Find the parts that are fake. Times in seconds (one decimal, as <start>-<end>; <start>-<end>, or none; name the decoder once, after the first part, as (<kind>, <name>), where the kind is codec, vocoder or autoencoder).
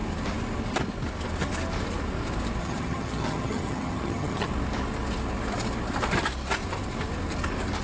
2.6-4.5 (vocoder, HiFi-GAN)